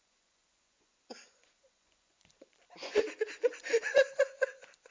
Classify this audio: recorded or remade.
remade